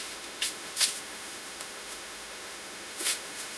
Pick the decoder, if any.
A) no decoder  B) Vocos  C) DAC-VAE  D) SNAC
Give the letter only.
C